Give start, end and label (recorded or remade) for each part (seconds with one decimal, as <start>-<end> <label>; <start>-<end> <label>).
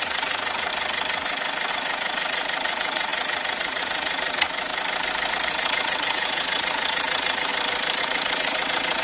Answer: 0.0-0.7 remade; 0.7-1.7 recorded; 1.7-4.7 remade; 4.7-5.3 recorded; 5.3-7.5 remade; 7.5-8.0 recorded; 8.0-9.0 remade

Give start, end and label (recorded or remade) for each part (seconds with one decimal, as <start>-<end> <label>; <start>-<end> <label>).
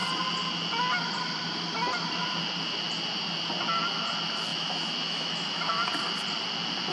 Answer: 0.0-4.5 recorded; 4.5-5.7 remade; 5.7-6.9 recorded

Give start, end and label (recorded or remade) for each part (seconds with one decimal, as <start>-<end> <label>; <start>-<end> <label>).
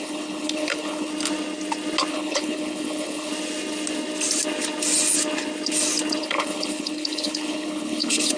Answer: 0.0-1.1 remade; 1.1-2.1 recorded; 2.1-3.3 remade; 3.3-6.2 recorded; 6.2-8.4 remade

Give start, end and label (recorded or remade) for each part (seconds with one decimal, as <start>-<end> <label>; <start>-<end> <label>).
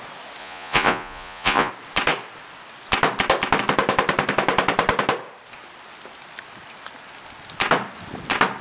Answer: 0.0-0.4 recorded; 0.4-1.7 remade; 1.7-8.6 recorded